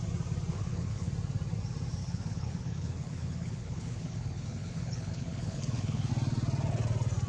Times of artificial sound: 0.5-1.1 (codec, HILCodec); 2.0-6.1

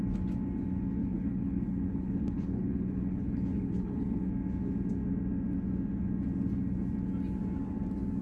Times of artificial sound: 1.0-4.3 (codec, HILCodec)

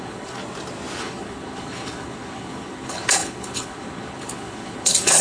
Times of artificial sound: 0.0-0.4 (codec, HILCodec); 1.0-5.2